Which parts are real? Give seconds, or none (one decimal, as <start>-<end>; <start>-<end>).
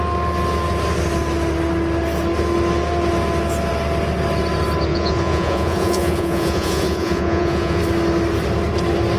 0.0-4.9; 7.8-9.2